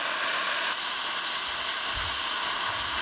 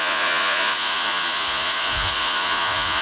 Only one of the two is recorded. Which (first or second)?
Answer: first